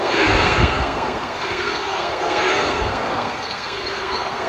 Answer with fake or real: fake